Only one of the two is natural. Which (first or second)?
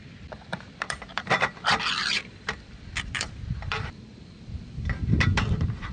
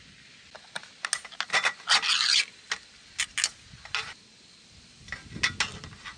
second